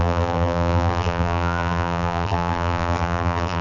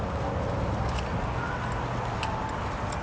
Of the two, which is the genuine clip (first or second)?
second